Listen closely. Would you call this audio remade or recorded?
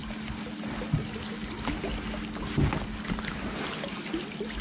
recorded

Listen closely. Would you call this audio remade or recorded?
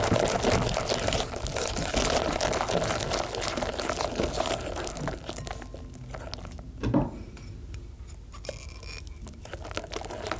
recorded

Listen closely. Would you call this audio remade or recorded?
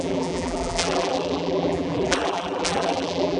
remade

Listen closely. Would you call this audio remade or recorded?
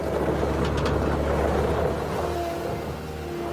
recorded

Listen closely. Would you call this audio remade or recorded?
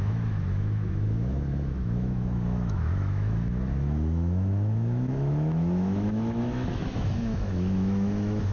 remade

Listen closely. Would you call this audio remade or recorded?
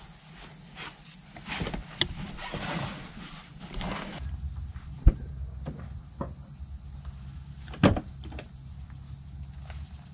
recorded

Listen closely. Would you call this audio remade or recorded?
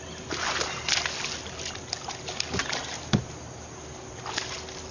recorded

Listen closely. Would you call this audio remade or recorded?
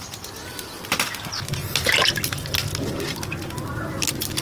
recorded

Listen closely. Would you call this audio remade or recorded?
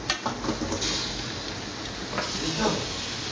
recorded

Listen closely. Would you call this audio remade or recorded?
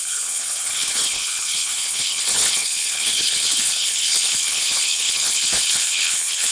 remade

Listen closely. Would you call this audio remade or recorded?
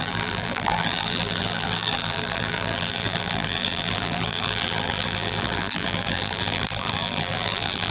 remade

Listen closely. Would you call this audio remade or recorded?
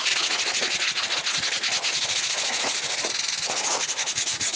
remade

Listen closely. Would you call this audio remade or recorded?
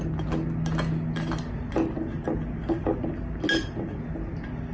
recorded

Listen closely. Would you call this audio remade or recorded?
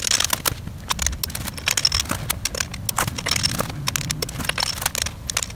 recorded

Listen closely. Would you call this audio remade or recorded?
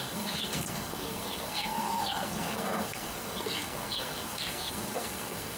remade